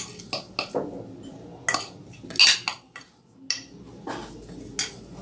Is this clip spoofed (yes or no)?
no